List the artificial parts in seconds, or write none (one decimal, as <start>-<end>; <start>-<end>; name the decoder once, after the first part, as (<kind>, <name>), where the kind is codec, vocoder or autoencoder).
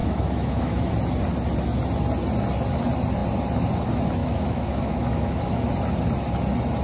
0.0-0.9 (autoencoder, DAC-VAE); 4.2-5.7